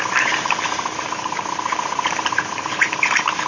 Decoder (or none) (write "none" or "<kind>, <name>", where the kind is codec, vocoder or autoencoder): vocoder, BigVGAN v2